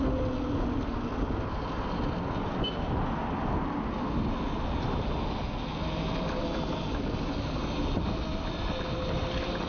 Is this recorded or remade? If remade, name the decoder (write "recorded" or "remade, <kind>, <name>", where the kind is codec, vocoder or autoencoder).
recorded